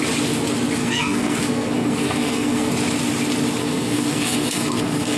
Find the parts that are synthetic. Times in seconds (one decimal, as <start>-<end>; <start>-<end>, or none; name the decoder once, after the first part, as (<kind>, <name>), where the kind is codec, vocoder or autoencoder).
0.8-2.7 (codec, SNAC); 3.6-5.2